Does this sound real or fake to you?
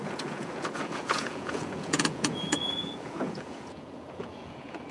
fake